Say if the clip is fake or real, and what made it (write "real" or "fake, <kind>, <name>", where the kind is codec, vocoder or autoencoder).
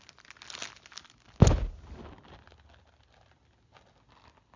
real